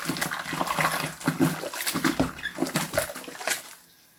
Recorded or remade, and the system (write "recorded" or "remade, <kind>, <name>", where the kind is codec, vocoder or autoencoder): recorded